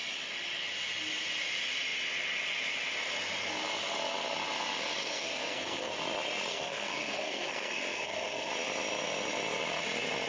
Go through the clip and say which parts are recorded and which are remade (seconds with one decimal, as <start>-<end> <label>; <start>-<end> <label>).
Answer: 0.0-5.0 recorded; 5.0-5.9 remade; 5.9-6.5 recorded; 6.5-8.5 remade; 8.5-10.3 recorded